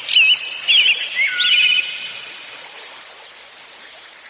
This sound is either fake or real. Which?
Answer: real